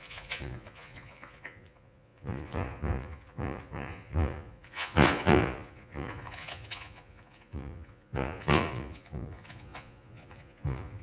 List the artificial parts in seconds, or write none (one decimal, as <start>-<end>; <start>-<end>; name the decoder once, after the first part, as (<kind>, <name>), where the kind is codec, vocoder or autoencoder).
0.0-11.0 (vocoder, Vocos)